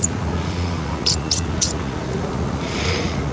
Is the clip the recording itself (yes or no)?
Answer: no